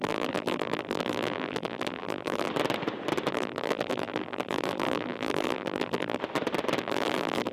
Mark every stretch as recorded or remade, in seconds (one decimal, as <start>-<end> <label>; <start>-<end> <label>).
0.0-2.5 remade; 2.5-3.3 recorded; 3.3-6.2 remade; 6.2-6.8 recorded; 6.8-7.5 remade